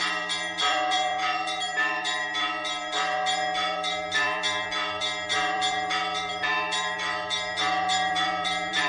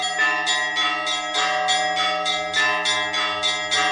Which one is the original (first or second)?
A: second